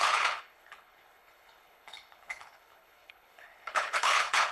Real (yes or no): no